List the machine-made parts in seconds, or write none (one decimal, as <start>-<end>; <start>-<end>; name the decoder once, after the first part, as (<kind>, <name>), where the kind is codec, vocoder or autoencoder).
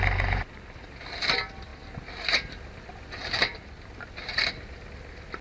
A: none